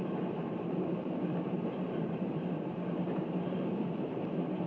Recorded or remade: remade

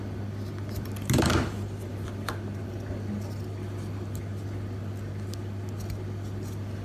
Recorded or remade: recorded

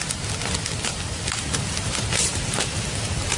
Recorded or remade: recorded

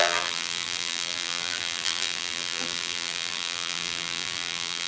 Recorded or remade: remade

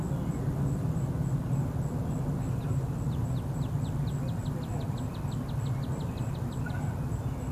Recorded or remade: recorded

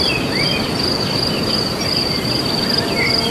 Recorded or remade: recorded